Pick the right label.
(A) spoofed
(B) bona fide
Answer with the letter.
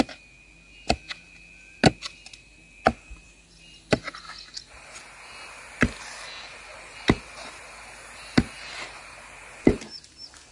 B